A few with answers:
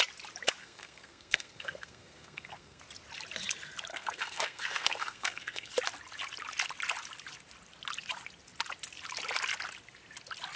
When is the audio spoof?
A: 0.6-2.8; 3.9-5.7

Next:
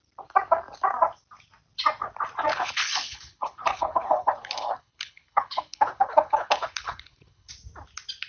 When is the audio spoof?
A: 2.5-7.5

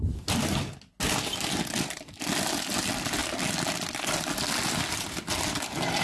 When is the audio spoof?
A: none

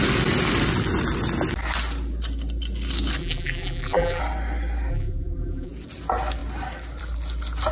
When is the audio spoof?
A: 3.2-4.2; 4.9-5.7